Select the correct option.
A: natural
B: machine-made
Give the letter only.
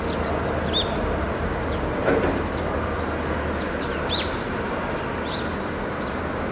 A